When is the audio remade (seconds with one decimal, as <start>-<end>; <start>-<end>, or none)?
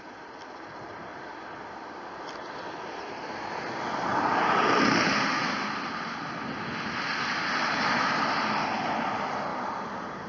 none